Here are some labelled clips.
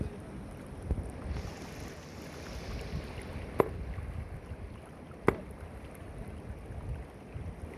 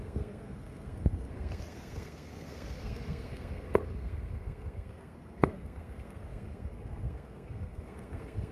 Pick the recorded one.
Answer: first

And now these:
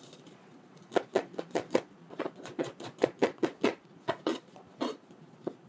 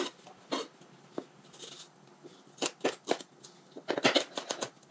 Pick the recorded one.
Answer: second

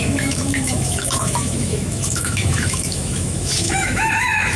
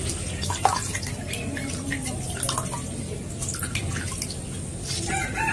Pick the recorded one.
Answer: second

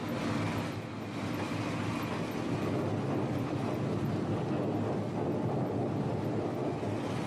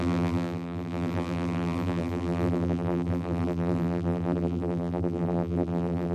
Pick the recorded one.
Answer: first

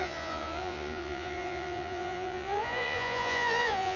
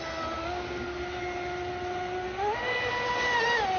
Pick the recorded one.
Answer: second